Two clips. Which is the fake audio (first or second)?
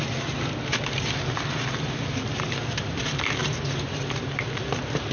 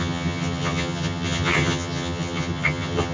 second